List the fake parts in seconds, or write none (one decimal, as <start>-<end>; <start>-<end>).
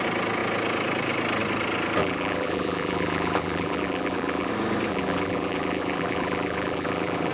2.0-4.5; 4.9-7.3